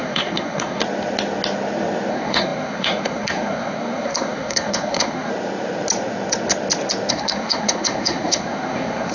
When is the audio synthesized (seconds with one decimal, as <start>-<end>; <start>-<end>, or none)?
0.0-0.8; 2.1-5.3; 7.1-9.1